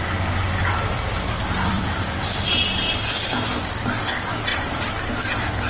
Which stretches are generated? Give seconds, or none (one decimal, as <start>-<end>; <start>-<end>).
0.6-4.0; 4.5-5.1